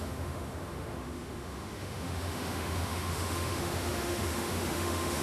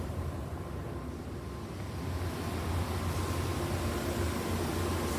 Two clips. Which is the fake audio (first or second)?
first